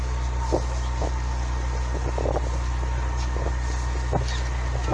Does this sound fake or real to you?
real